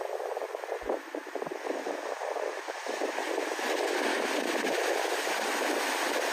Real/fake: real